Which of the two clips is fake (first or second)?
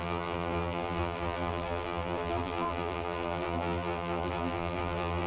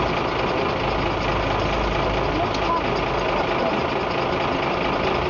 first